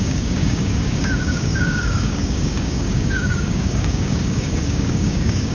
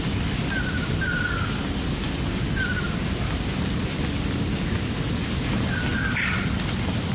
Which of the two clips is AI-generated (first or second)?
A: first